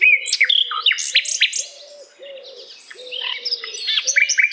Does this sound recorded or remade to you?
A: recorded